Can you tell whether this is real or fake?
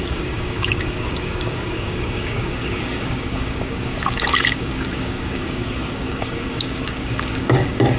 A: fake